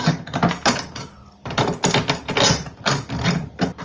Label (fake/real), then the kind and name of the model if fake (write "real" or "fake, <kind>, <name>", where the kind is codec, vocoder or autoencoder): real